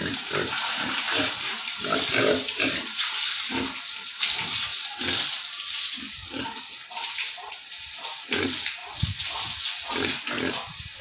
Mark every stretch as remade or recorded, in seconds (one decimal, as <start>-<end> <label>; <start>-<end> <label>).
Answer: 0.0-4.7 remade; 4.7-5.3 recorded; 5.3-8.8 remade; 8.8-10.5 recorded; 10.5-11.0 remade